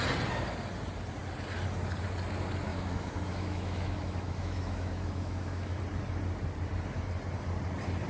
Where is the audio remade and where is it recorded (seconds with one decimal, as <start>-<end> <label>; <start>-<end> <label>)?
0.0-2.7 recorded; 2.7-5.8 remade; 5.8-8.1 recorded